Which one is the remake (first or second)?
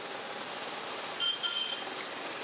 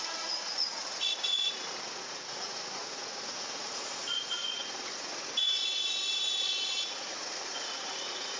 second